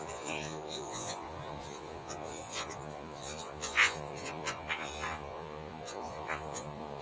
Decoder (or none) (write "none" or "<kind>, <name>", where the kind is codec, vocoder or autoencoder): vocoder, Vocos